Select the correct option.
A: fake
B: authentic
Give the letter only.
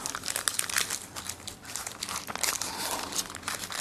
B